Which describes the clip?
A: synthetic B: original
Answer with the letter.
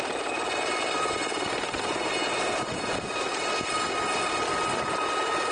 B